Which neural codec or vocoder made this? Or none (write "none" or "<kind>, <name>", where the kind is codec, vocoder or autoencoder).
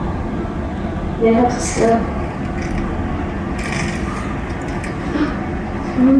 none